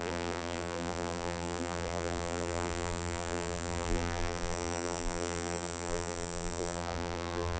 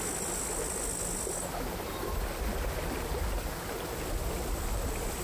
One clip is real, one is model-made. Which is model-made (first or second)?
first